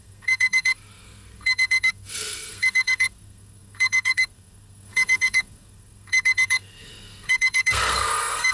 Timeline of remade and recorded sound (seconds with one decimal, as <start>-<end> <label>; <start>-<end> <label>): 0.0-8.5 remade